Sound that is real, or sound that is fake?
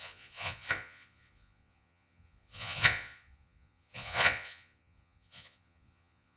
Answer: fake